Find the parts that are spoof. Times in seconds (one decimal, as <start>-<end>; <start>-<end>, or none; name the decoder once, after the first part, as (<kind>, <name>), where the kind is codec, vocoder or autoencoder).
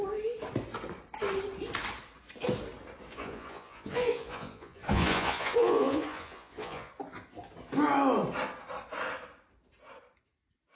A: 3.1-6.9 (vocoder, Vocos)